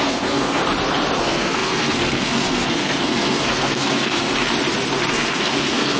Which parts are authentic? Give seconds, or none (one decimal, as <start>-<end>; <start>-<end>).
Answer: 0.6-1.2; 4.3-5.1